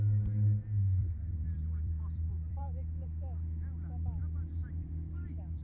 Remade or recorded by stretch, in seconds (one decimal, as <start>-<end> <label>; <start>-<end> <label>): 0.0-1.0 recorded; 1.0-2.6 remade; 2.6-4.2 recorded; 4.2-5.6 remade